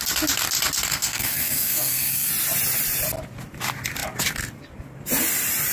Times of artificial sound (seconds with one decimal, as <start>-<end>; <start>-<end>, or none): 0.9-2.3